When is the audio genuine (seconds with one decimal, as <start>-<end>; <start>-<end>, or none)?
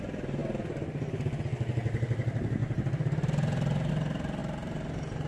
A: 0.0-2.6; 3.9-4.4